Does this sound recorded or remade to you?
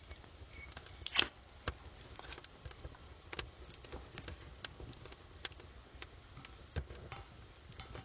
recorded